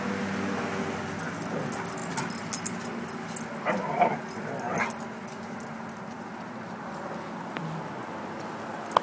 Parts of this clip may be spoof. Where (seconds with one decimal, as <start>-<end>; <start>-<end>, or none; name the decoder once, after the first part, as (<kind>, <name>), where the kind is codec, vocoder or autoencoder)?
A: none